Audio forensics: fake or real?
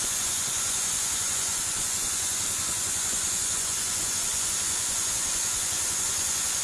fake